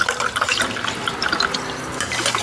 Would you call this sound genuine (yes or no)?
yes